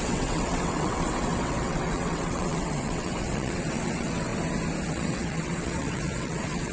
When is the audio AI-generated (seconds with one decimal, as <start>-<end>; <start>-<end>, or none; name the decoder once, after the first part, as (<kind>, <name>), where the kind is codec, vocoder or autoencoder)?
0.0-4.3 (vocoder, WaveNeXt); 4.9-6.7